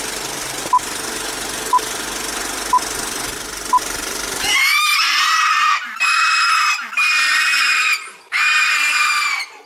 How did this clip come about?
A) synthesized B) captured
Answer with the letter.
B